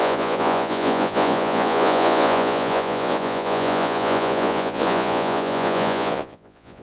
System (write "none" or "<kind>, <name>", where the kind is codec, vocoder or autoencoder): vocoder, Vocos